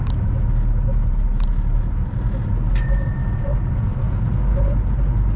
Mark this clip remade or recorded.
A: recorded